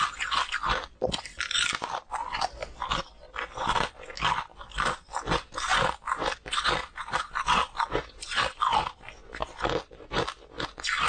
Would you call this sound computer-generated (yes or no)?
no